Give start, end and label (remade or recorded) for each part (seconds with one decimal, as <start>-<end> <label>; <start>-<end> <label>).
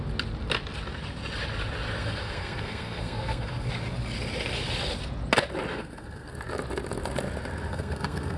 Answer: 0.0-2.0 recorded; 2.0-3.7 remade; 3.7-5.7 recorded; 5.7-6.3 remade; 6.3-7.7 recorded; 7.7-8.4 remade